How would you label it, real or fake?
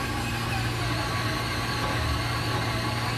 real